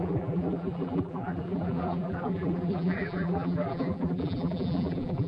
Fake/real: fake